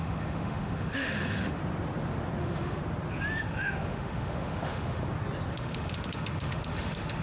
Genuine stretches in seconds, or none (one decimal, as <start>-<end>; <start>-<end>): 1.6-2.4; 2.8-3.4; 5.0-5.5